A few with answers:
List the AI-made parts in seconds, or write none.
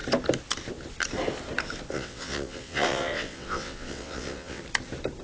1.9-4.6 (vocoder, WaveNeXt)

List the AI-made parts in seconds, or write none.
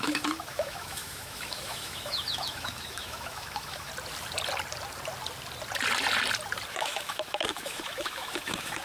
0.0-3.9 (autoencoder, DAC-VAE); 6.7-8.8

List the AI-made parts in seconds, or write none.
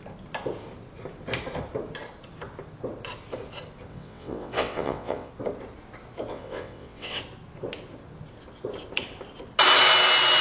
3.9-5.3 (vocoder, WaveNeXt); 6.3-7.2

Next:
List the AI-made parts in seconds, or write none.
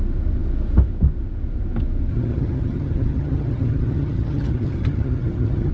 2.1-5.7 (vocoder, HiFi-GAN)